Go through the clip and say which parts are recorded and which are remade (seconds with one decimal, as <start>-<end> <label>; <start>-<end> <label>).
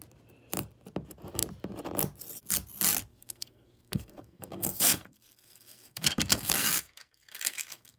0.0-3.1 recorded; 3.1-8.0 remade